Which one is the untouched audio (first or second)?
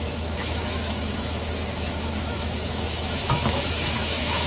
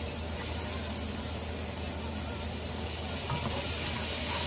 second